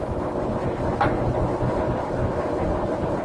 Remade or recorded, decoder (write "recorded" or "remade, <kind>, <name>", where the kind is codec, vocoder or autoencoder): recorded